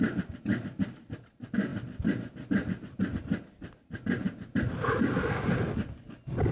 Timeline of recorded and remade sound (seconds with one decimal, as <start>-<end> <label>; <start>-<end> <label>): 0.0-6.5 recorded